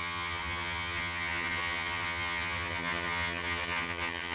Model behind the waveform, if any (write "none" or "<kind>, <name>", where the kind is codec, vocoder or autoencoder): vocoder, HiFi-GAN